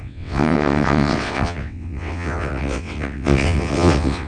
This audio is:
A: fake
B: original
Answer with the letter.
A